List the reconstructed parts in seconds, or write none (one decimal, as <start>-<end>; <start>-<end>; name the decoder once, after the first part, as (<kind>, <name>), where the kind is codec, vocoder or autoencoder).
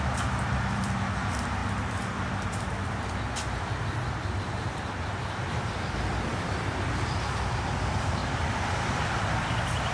0.0-8.2 (vocoder, BigVGAN v2); 9.2-9.9